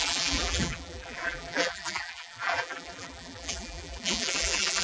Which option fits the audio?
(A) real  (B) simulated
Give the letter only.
B